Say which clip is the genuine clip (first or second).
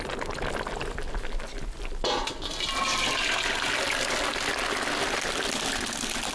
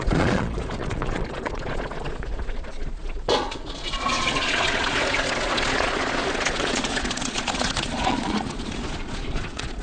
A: first